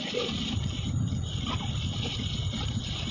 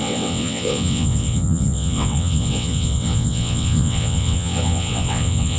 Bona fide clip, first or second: first